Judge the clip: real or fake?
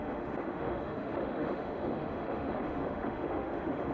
fake